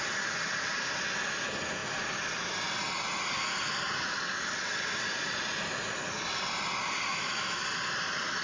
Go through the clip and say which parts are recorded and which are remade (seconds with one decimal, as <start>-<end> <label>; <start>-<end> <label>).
0.0-7.1 recorded; 7.1-7.6 remade; 7.6-8.4 recorded